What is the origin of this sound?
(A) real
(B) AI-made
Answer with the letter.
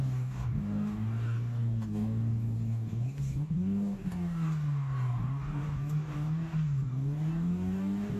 B